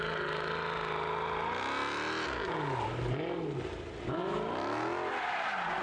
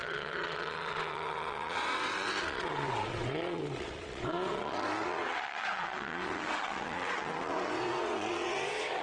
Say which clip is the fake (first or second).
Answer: second